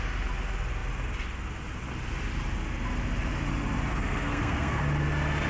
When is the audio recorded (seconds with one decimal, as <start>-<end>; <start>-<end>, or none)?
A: 0.0-3.9; 4.8-5.5